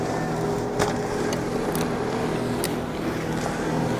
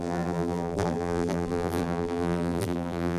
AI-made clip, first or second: second